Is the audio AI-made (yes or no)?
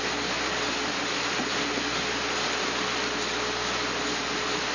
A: no